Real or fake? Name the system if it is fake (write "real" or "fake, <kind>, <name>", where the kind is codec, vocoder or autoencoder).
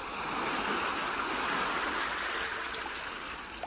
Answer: real